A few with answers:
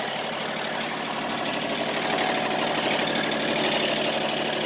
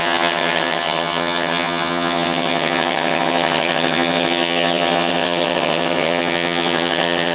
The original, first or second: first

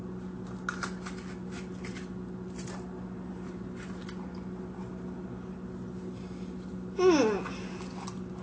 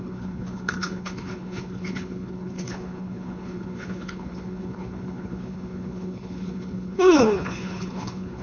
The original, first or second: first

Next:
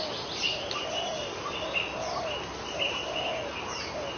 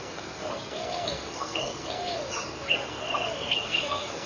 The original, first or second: first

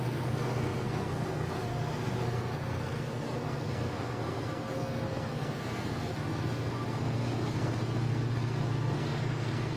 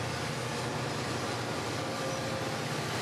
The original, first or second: second